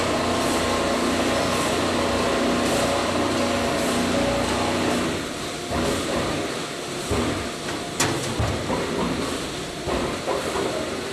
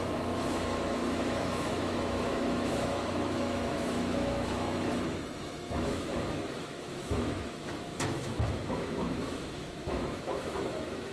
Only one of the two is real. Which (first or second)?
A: first